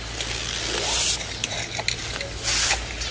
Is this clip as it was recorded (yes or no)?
yes